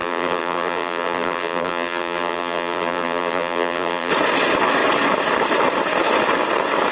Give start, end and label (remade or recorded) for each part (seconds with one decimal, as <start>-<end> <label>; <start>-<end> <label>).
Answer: 0.0-4.1 remade; 4.1-6.9 recorded